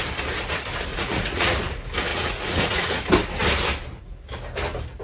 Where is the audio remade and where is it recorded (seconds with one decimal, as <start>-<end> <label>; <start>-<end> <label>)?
0.0-0.9 recorded; 0.9-1.6 remade; 1.6-2.1 recorded; 2.1-3.0 remade; 3.0-5.0 recorded

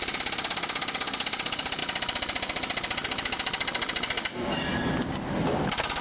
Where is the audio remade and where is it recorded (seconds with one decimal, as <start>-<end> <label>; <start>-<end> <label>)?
0.0-6.0 recorded

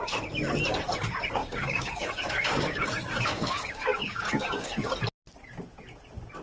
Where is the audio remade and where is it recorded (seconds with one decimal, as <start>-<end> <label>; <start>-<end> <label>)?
0.0-1.4 recorded; 1.4-4.9 remade; 4.9-6.4 recorded

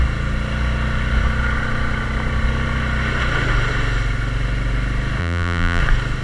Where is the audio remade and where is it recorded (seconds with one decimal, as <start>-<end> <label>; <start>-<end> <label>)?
0.0-5.2 recorded; 5.2-5.8 remade; 5.8-6.2 recorded